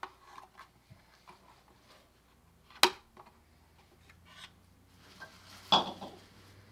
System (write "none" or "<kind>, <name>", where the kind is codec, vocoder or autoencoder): none